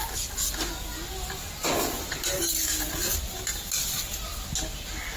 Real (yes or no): yes